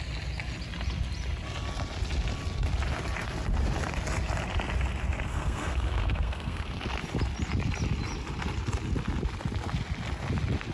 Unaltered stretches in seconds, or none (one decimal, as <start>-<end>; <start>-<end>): 0.0-5.3; 6.8-10.7